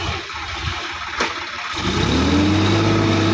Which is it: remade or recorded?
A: recorded